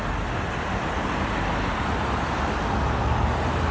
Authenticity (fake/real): real